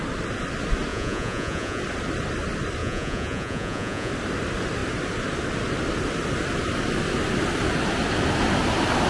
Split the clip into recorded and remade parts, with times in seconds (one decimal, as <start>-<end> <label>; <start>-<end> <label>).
0.0-0.9 recorded; 0.9-1.8 remade; 1.8-2.8 recorded; 2.8-4.1 remade; 4.1-9.1 recorded